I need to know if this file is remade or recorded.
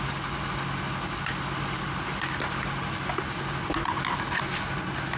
recorded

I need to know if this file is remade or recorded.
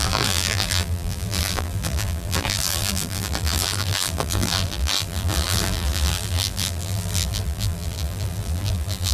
remade